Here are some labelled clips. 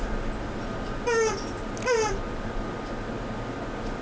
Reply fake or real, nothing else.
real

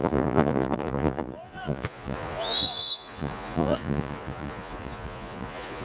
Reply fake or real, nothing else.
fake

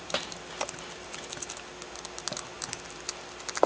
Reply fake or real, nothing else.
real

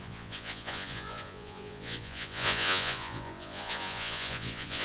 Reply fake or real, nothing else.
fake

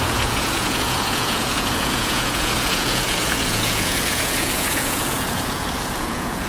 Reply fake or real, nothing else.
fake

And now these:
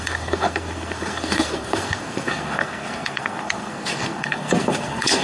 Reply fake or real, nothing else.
fake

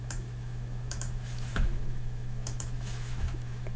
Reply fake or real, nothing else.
fake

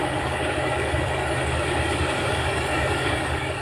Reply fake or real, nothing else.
fake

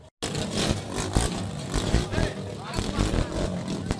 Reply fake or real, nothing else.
real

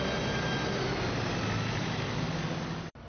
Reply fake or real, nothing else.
real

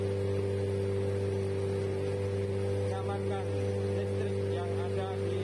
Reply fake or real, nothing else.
real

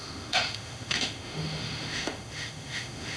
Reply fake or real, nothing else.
fake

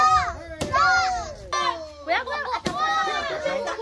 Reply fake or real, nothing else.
real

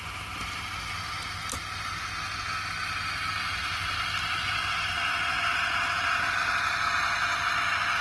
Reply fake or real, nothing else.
real